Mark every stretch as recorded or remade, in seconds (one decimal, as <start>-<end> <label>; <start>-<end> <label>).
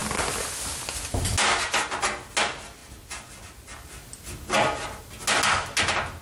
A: 0.0-6.2 recorded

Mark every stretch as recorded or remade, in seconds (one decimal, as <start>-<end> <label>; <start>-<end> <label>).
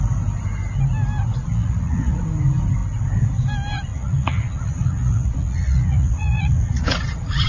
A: 0.0-1.5 recorded; 1.5-2.2 remade; 2.2-3.9 recorded; 3.9-7.5 remade